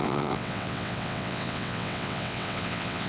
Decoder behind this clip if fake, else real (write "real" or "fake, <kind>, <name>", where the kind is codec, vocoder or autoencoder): fake, vocoder, WaveNeXt